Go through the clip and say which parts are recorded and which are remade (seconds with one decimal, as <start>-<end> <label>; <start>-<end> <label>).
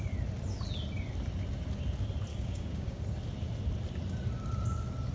0.0-2.3 recorded; 2.3-3.0 remade; 3.0-5.1 recorded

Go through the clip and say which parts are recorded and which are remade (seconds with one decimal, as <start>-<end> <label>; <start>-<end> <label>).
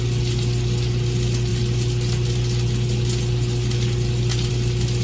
0.0-5.0 recorded